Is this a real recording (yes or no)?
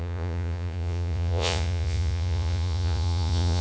no